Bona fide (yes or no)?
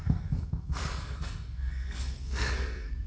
no